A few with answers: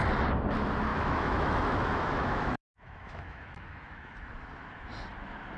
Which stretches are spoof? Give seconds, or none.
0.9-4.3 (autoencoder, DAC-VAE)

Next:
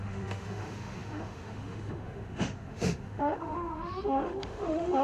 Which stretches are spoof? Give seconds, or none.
0.0-5.0 (autoencoder, DAC-VAE)

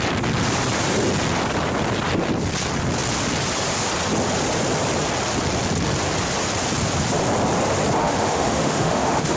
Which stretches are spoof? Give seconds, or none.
8.0-9.4 (autoencoder, DAC-VAE)

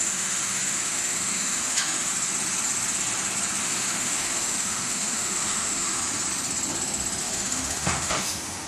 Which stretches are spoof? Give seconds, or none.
0.0-2.1 (autoencoder, DAC-VAE); 3.6-6.0; 7.2-8.7